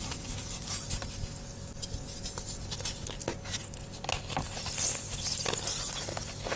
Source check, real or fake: real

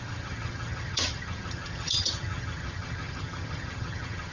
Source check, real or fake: fake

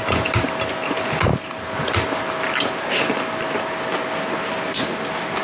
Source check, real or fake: real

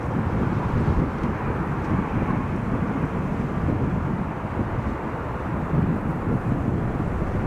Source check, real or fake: real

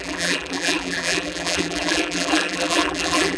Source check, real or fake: fake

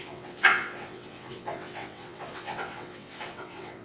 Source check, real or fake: fake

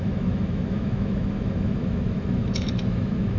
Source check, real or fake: fake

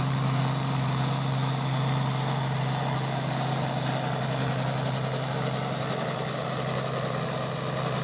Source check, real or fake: real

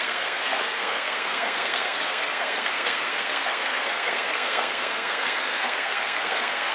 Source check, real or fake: fake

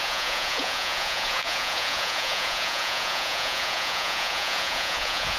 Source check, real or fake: fake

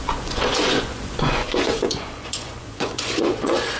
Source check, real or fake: fake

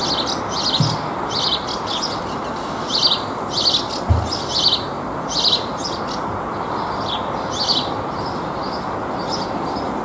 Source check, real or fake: real